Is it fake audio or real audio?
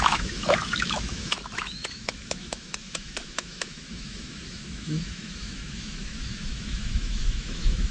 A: fake